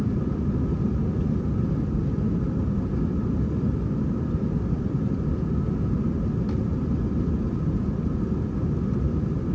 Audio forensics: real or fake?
real